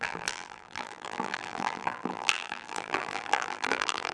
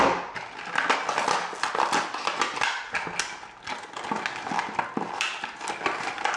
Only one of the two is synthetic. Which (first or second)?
first